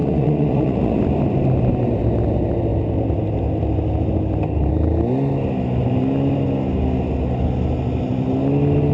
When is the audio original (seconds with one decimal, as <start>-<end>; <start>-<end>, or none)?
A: 1.0-8.9